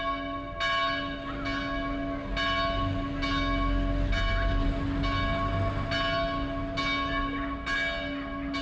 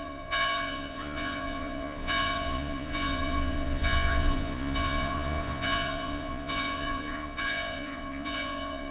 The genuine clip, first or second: first